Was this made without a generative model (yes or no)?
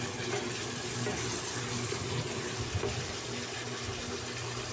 yes